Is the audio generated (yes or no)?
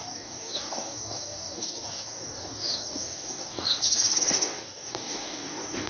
yes